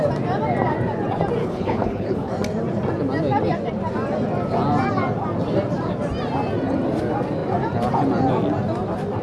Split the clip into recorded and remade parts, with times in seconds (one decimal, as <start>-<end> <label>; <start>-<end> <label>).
0.0-1.4 recorded; 1.4-2.3 remade; 2.3-9.2 recorded